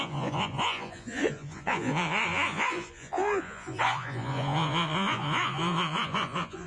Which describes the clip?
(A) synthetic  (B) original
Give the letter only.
A